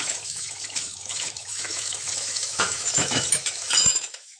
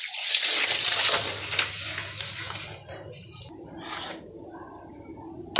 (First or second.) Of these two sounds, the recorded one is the second